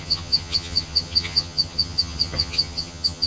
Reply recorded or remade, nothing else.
remade